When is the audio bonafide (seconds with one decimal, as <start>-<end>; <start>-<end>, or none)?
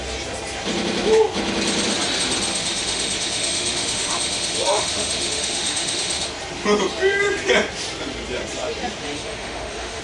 0.0-2.5; 6.3-9.0